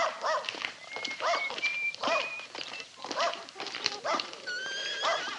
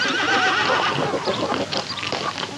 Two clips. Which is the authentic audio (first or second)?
second